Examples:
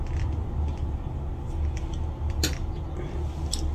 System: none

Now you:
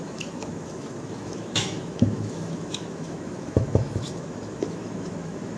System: autoencoder, DAC-VAE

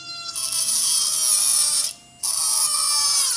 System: none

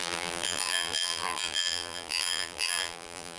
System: vocoder, BigVGAN v2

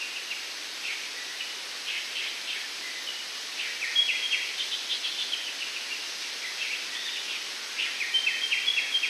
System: none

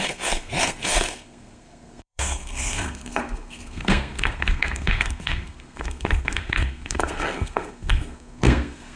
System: codec, SNAC